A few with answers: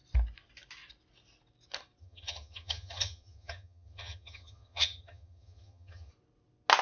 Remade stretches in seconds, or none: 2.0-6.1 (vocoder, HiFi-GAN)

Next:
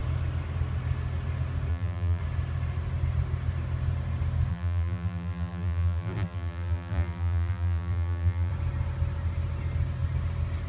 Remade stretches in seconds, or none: 1.7-2.2 (vocoder, BigVGAN v2); 4.5-8.5

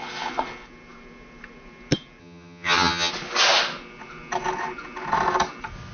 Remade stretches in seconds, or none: 2.2-3.1 (vocoder, HiFi-GAN)

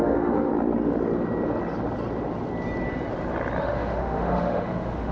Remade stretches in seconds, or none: 0.0-0.5 (autoencoder, DAC-VAE); 3.6-5.1

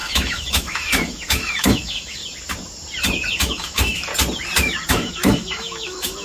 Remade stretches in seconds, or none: 0.0-2.2 (autoencoder, DAC-VAE); 3.4-4.1; 4.9-6.2